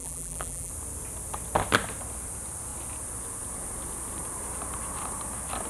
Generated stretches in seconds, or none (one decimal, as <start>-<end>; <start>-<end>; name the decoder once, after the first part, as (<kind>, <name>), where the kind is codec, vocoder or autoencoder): 0.0-0.7 (vocoder, BigVGAN v2)